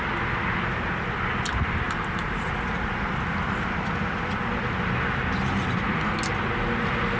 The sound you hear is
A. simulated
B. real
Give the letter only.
B